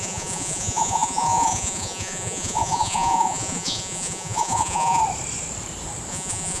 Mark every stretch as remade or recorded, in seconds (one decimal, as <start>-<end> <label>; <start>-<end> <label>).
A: 0.0-5.0 remade; 5.0-6.1 recorded; 6.1-6.6 remade